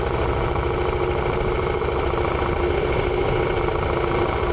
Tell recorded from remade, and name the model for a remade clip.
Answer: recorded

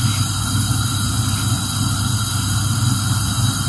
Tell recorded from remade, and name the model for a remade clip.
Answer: recorded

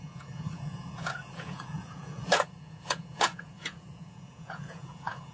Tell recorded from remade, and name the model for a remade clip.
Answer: remade, vocoder, Vocos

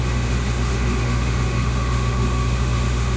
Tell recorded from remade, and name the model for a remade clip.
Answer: remade, autoencoder, DAC-VAE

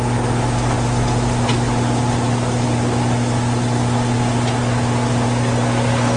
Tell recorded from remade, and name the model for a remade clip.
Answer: recorded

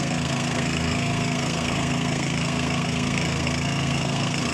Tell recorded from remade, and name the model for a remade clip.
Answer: remade, codec, SNAC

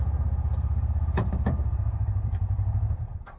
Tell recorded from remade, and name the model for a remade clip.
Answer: remade, vocoder, BigVGAN v2